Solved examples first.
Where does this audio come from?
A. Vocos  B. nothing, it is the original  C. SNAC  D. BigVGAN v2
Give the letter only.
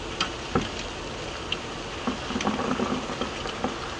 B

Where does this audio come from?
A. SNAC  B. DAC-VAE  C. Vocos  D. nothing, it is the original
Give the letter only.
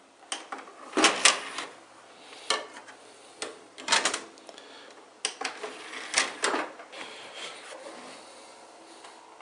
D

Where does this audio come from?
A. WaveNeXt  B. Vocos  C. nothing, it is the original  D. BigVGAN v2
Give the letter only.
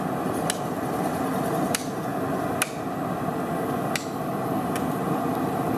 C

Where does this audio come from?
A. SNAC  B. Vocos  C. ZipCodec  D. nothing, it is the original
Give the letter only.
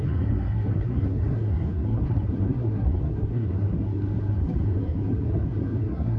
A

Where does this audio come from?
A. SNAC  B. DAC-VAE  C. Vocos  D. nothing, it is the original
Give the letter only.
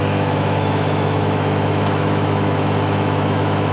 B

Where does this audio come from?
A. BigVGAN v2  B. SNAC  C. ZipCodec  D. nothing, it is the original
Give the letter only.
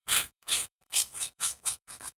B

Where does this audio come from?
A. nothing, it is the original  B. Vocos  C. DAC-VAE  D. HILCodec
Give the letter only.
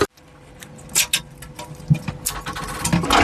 A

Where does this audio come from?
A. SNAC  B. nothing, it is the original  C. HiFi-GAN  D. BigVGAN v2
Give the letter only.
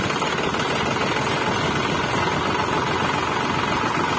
B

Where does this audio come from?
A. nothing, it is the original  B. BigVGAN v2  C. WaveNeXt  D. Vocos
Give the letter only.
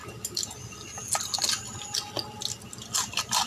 A